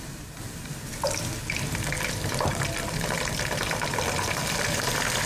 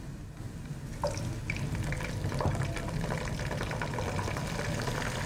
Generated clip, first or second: first